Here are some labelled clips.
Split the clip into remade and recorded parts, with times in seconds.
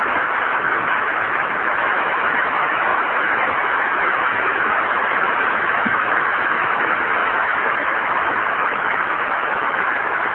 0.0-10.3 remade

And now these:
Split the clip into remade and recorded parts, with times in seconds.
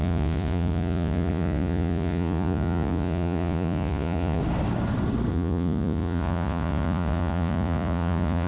0.0-4.4 remade; 4.4-5.3 recorded; 5.3-8.5 remade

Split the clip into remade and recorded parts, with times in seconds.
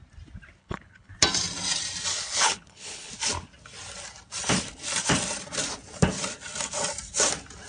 0.0-0.6 recorded; 0.6-1.1 remade; 1.1-2.1 recorded; 2.1-3.1 remade; 3.1-7.7 recorded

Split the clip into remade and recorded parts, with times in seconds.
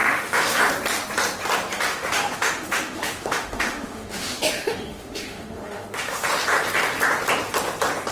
0.0-0.6 remade; 0.6-1.9 recorded; 1.9-6.4 remade; 6.4-8.1 recorded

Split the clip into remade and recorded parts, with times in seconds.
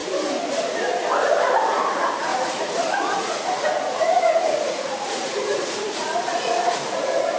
0.0-1.9 recorded; 1.9-7.4 remade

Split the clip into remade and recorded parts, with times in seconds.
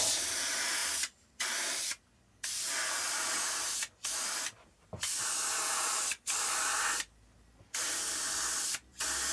0.0-9.3 recorded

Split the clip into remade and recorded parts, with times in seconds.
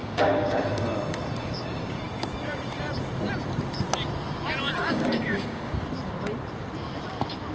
0.0-0.5 remade; 0.5-4.8 recorded; 4.8-5.7 remade; 5.7-7.5 recorded